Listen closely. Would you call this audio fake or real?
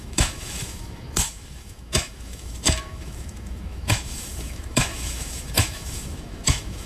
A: fake